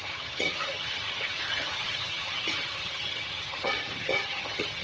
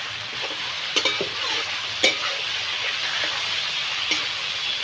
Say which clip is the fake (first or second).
first